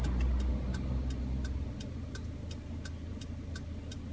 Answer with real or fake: real